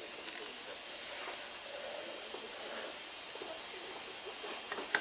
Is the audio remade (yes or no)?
no